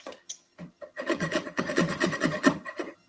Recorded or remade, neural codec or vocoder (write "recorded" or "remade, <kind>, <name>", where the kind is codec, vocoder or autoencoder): remade, vocoder, HiFi-GAN